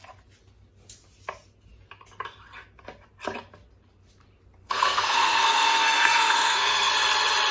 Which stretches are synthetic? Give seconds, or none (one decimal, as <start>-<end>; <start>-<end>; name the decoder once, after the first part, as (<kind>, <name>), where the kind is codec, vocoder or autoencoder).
4.6-6.9 (codec, SNAC)